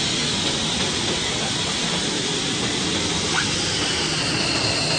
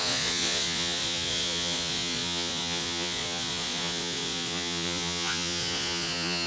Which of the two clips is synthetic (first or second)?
second